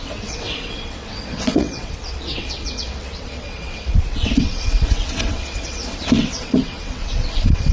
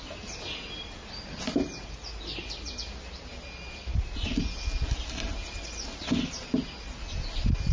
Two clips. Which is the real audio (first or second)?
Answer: second